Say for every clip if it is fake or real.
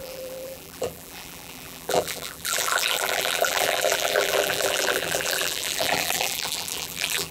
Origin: fake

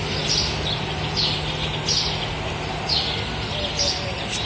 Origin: real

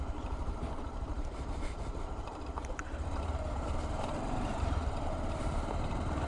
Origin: fake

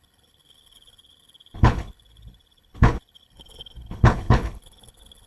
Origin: fake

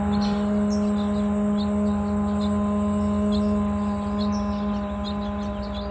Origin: real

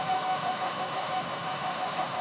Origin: fake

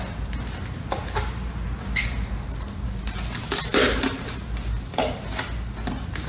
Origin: real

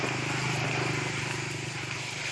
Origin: real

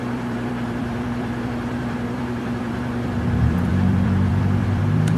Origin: fake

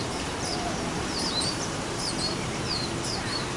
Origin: fake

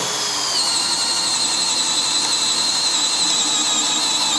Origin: real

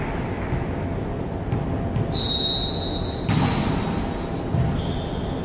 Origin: real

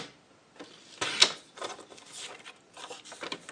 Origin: real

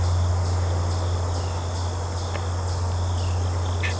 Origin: real